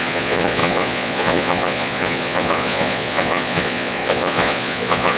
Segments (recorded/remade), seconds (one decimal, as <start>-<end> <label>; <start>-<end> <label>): 0.0-5.2 remade